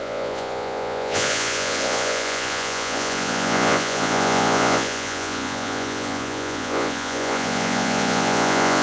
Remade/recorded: remade